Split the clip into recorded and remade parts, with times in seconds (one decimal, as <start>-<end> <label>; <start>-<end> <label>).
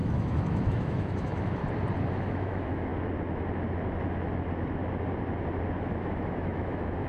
0.0-1.6 remade; 1.6-2.1 recorded; 2.1-2.9 remade; 2.9-5.8 recorded; 5.8-7.1 remade